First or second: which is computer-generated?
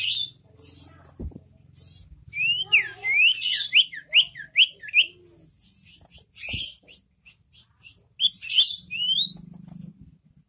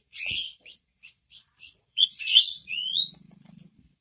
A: second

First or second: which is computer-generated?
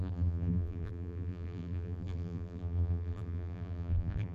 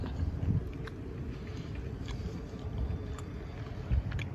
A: first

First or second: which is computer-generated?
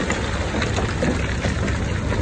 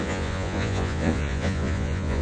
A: second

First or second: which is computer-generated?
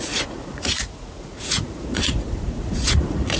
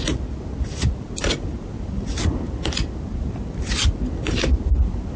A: first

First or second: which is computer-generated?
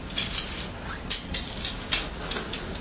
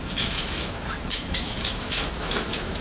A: second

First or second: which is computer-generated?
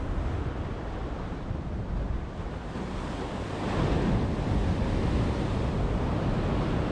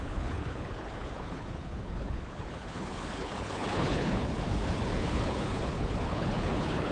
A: second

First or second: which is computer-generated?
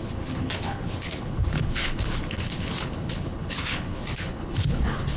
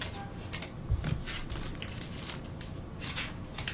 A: first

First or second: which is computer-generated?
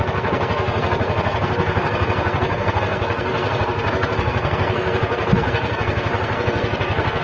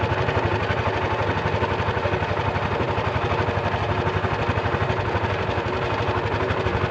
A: first